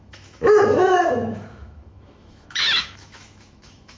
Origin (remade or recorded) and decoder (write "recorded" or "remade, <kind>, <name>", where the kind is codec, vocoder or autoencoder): remade, autoencoder, DAC-VAE